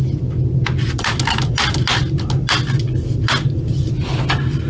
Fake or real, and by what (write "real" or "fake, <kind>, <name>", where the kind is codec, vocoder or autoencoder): real